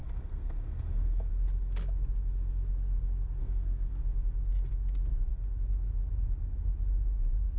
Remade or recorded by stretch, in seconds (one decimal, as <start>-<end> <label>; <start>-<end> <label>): 0.0-1.3 remade; 1.3-3.4 recorded; 3.4-4.0 remade; 4.0-7.6 recorded